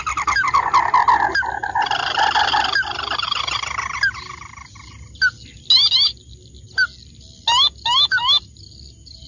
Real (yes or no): yes